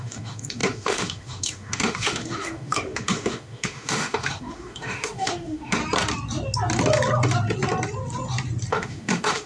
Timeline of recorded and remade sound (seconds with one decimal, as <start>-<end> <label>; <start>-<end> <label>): 0.0-5.8 remade; 5.8-8.7 recorded; 8.7-9.5 remade